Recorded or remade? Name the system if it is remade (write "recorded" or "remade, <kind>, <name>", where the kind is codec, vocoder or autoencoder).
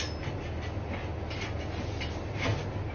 recorded